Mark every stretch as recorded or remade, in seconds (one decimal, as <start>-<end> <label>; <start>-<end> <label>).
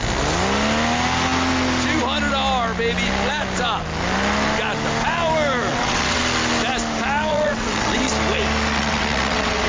0.0-5.7 recorded; 5.7-6.2 remade; 6.2-7.3 recorded; 7.3-8.1 remade; 8.1-8.7 recorded; 8.7-9.7 remade